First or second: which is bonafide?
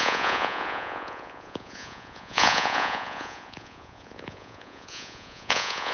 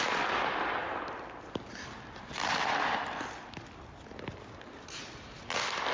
second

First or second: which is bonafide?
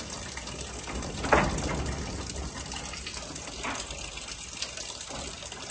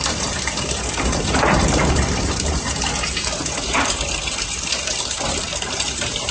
first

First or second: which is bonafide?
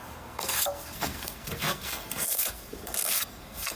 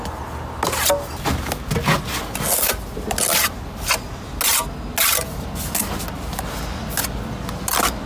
second